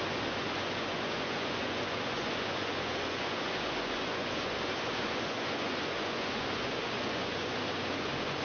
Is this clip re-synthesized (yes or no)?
yes